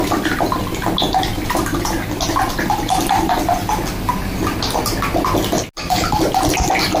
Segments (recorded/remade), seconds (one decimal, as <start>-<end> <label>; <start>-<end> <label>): 0.0-1.3 recorded; 1.3-3.2 remade; 3.2-7.0 recorded